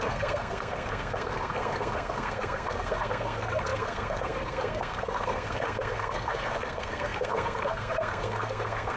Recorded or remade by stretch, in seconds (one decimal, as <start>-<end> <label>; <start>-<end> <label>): 0.0-9.0 remade